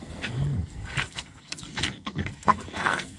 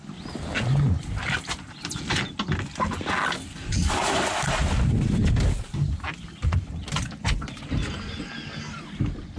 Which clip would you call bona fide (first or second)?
second